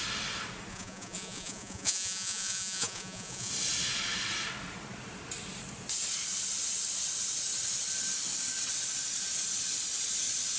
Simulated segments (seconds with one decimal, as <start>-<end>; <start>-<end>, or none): 0.7-3.5